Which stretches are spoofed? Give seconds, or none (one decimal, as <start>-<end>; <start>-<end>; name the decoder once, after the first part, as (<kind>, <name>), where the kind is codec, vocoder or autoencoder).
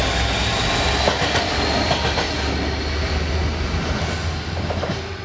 none